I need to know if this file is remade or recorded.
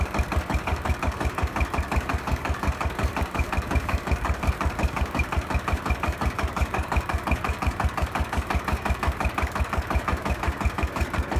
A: remade